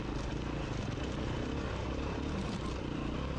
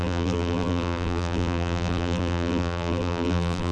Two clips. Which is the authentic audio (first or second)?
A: first